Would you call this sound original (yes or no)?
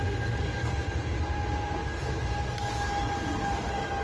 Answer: yes